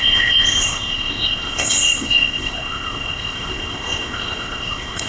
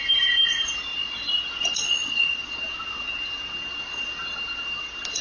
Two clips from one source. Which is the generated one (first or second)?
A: first